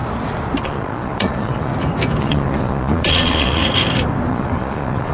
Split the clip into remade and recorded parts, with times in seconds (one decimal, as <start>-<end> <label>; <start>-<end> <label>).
0.0-0.6 recorded; 0.6-1.7 remade; 1.7-2.2 recorded; 2.2-3.6 remade; 3.6-4.3 recorded; 4.3-5.1 remade